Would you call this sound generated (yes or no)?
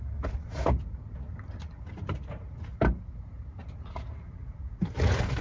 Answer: no